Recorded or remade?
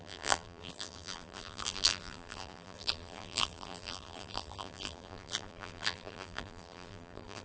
remade